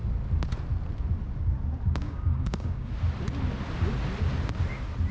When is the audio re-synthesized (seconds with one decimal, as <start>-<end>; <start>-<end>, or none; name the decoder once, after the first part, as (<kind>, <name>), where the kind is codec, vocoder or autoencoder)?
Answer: 2.0-2.9 (codec, DAC)